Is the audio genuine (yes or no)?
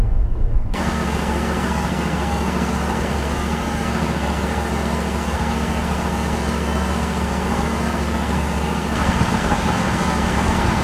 no